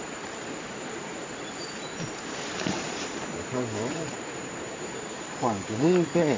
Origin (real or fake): fake